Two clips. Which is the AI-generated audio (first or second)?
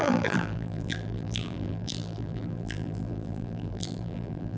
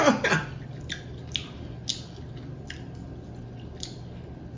first